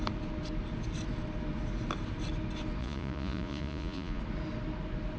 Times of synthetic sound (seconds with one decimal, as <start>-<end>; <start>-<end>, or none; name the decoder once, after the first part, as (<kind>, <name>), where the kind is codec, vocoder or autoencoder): 2.8-4.2 (vocoder, Vocos)